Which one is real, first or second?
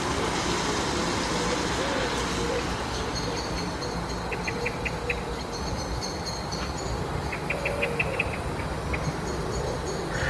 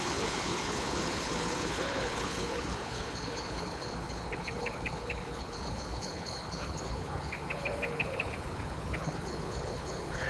first